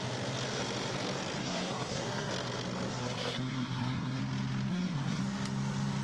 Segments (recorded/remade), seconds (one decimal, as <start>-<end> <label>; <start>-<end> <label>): 0.0-1.4 recorded; 1.4-2.3 remade; 2.3-2.9 recorded; 2.9-4.2 remade; 4.2-4.7 recorded; 4.7-5.2 remade; 5.2-6.0 recorded